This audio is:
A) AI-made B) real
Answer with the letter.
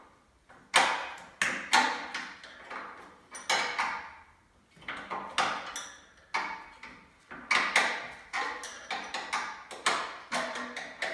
B